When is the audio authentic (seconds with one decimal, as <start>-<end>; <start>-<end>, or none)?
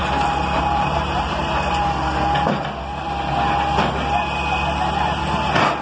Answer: 1.8-5.8